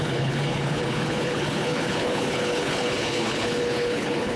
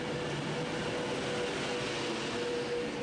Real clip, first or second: second